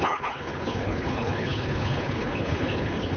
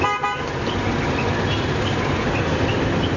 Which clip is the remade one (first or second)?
first